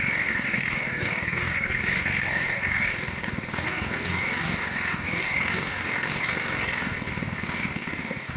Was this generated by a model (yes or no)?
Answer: yes